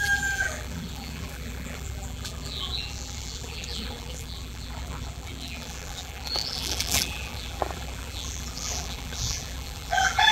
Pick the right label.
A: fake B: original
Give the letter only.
A